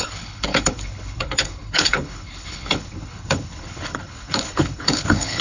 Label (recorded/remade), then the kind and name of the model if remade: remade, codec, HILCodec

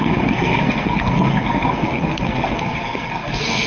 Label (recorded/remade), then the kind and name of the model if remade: remade, codec, SNAC